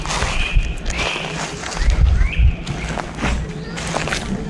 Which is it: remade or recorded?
recorded